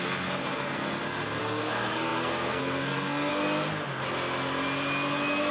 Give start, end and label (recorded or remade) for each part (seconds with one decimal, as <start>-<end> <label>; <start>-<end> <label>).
0.0-0.9 remade; 0.9-1.4 recorded; 1.4-3.3 remade; 3.3-5.5 recorded